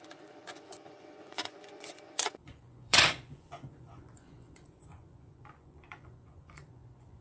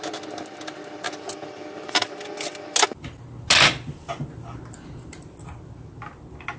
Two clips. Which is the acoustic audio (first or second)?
second